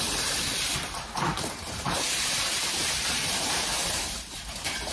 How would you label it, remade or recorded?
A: remade